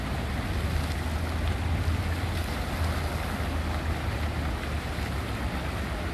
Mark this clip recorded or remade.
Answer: recorded